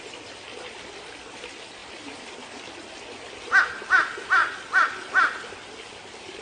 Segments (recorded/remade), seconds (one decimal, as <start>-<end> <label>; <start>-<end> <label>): 0.0-6.4 recorded